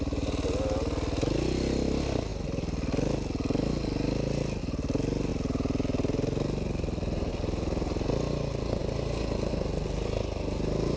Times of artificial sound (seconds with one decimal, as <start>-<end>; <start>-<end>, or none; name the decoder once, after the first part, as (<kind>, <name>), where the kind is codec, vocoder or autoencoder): none